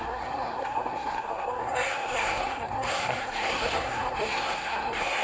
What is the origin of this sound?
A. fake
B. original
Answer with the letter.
A